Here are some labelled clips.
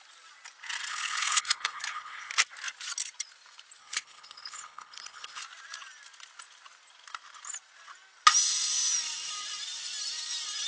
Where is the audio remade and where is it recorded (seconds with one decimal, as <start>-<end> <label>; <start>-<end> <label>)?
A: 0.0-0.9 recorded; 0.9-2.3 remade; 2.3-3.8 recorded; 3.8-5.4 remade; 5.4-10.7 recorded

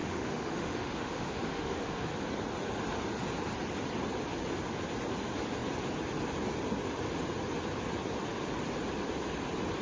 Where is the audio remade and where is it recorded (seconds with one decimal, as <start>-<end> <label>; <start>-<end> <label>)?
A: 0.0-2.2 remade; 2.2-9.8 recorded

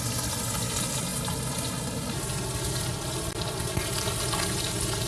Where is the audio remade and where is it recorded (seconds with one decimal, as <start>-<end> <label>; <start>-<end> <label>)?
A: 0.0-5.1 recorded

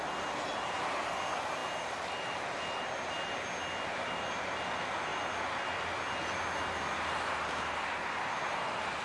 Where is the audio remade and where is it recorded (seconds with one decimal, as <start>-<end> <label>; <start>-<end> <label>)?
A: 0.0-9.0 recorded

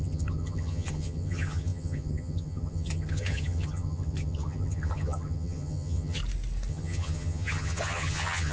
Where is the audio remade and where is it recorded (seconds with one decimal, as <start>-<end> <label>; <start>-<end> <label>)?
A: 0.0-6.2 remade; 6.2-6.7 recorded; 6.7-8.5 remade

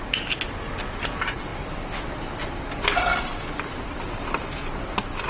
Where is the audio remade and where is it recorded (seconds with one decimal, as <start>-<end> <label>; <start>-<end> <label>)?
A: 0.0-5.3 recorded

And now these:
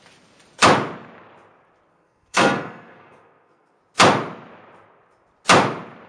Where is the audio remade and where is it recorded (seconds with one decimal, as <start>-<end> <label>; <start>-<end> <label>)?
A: 0.0-1.9 recorded; 1.9-3.8 remade; 3.8-6.1 recorded

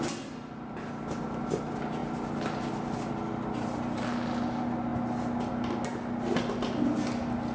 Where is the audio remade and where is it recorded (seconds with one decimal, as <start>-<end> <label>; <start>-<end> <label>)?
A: 0.0-7.5 recorded